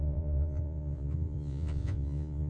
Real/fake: fake